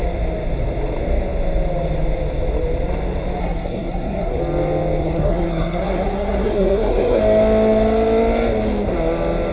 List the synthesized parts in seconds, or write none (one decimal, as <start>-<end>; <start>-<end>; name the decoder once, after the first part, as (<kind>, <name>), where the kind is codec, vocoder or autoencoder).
3.4-4.4 (codec, SNAC); 5.0-7.2

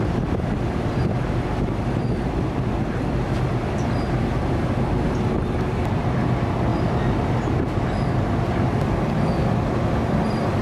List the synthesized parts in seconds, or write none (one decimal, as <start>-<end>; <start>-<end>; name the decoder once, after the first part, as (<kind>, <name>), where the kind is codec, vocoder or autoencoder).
0.0-6.7 (vocoder, BigVGAN v2); 7.5-10.6

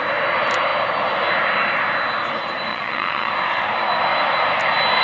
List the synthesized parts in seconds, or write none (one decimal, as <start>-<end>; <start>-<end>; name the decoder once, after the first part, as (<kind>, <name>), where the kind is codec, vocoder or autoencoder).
2.7-3.3 (vocoder, Vocos)